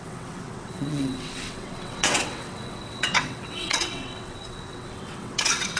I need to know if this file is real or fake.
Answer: fake